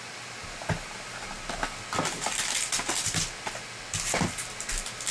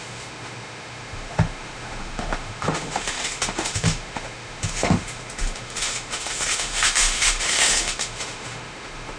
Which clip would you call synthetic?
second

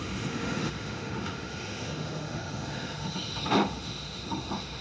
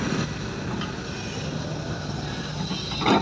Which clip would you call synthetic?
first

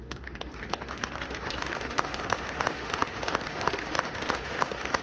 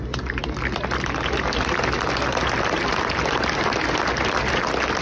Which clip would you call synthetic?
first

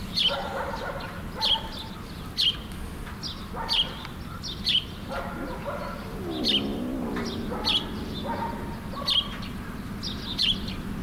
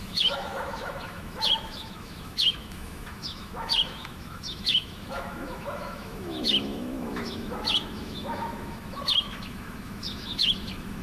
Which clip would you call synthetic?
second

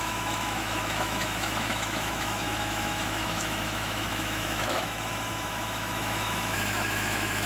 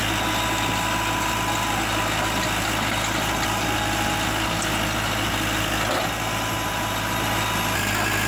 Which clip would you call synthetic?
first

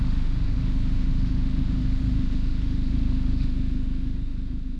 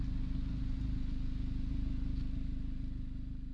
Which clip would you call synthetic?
first